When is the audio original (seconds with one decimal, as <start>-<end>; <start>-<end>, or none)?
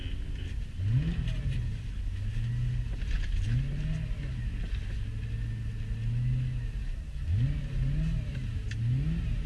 0.0-9.5